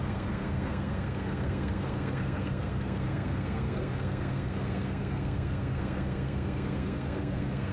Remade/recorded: remade